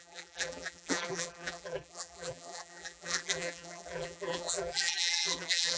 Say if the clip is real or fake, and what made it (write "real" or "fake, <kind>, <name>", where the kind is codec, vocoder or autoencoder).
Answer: fake, vocoder, BigVGAN v2